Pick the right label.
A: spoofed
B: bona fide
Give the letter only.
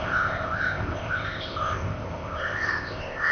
A